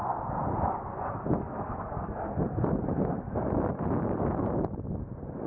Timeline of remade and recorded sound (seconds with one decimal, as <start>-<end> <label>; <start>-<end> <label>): 0.0-5.5 recorded